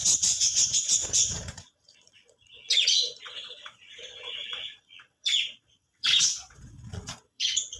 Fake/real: fake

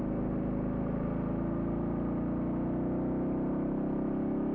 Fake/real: real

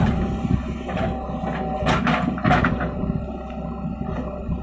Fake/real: real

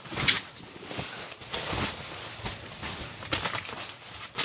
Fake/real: real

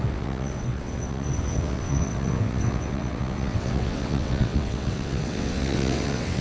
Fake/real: fake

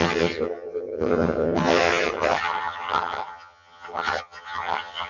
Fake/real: fake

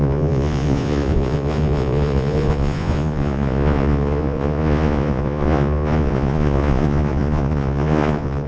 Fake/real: fake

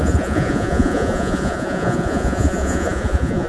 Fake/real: fake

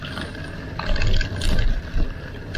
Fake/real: real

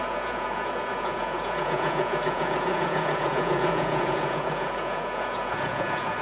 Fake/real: fake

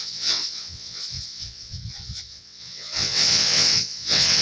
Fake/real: fake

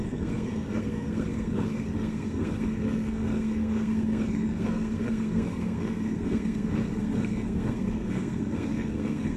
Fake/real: fake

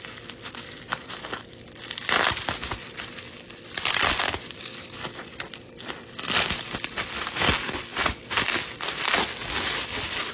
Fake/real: real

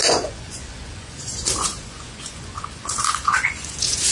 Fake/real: fake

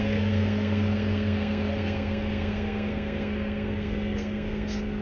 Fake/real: fake